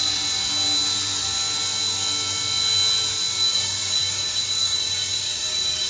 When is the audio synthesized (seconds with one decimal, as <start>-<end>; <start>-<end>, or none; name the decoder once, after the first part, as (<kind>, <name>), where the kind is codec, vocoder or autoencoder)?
3.5-5.9 (codec, DAC)